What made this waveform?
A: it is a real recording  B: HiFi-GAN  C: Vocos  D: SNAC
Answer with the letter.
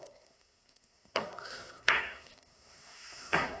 D